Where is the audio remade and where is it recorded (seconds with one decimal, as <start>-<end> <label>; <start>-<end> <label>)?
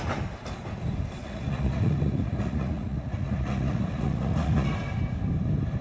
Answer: 0.0-1.2 recorded; 1.2-4.7 remade; 4.7-5.8 recorded